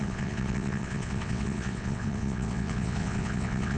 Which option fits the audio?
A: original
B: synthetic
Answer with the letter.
B